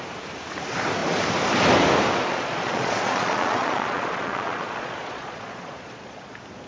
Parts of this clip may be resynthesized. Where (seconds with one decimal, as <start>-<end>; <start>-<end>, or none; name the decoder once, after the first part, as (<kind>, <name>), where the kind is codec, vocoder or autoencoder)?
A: 2.3-6.3 (vocoder, Vocos)